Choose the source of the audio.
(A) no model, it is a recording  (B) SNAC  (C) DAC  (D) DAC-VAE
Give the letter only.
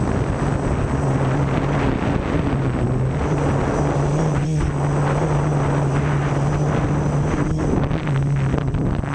A